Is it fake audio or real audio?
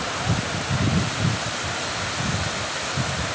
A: real